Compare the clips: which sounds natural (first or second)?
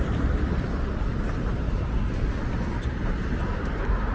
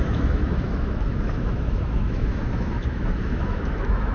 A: first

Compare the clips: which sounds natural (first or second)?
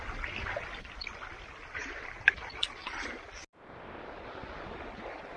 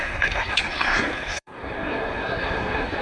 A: first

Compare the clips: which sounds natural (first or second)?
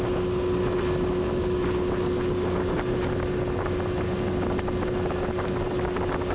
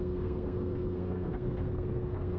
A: first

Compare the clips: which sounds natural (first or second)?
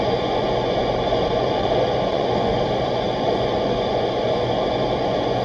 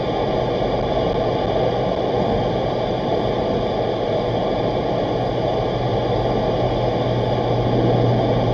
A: second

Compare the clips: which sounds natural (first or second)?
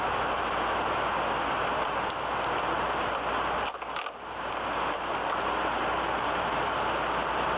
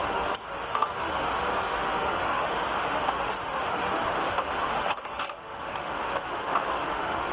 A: first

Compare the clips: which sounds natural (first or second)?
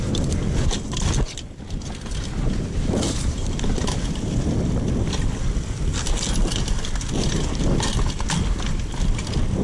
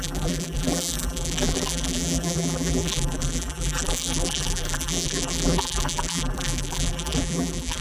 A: first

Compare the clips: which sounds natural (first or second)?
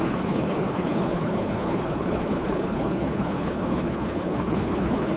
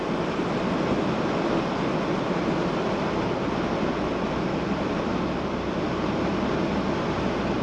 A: second